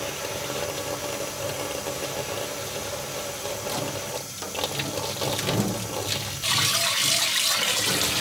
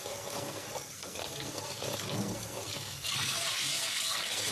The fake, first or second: second